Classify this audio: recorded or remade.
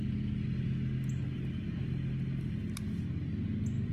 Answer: recorded